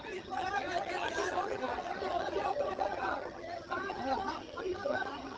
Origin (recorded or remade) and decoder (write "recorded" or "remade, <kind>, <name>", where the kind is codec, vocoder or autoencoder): remade, vocoder, HiFi-GAN